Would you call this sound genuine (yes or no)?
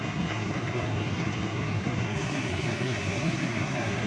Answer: no